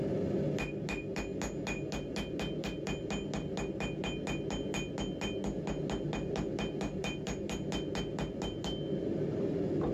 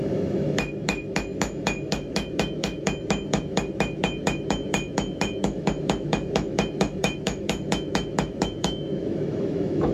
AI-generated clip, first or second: second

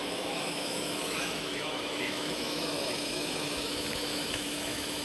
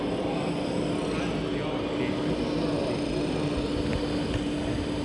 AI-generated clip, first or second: first